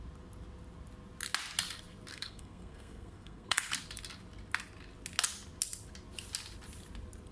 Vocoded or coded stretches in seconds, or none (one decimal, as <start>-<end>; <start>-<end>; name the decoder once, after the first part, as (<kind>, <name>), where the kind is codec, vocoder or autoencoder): 2.1-3.7 (codec, SNAC)